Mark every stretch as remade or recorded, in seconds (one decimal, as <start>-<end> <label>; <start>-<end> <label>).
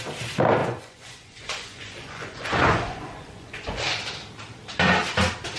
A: 0.0-0.6 recorded; 0.6-4.0 remade; 4.0-5.6 recorded